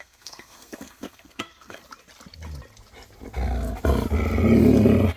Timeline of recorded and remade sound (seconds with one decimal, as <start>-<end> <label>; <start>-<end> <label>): 0.0-1.8 remade; 1.8-5.2 recorded